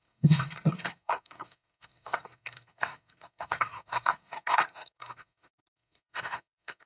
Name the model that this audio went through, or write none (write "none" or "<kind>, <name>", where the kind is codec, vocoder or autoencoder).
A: codec, SNAC